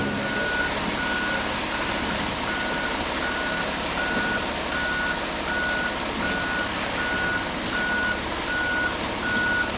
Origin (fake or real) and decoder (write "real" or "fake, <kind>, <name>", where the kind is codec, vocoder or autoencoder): real